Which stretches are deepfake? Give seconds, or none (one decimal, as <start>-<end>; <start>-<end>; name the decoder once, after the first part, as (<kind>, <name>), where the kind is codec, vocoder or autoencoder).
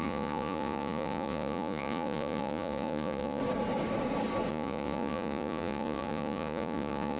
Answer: 0.0-3.4 (vocoder, Vocos); 4.5-7.2